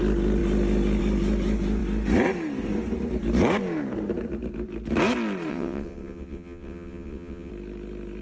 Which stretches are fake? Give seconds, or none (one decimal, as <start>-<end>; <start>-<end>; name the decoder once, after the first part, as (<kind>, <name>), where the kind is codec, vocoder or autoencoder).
5.5-7.5 (vocoder, WaveNeXt)